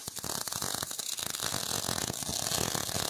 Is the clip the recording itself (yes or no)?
yes